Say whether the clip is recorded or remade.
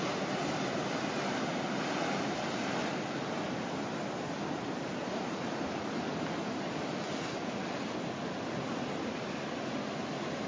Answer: recorded